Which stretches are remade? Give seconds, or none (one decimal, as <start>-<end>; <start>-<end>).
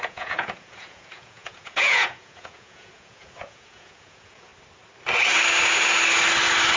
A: 0.0-4.5